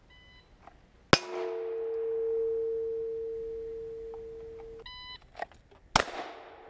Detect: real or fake real